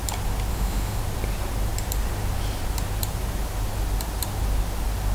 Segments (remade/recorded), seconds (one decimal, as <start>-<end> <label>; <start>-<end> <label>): 0.0-0.5 recorded; 0.5-1.0 remade; 1.0-5.1 recorded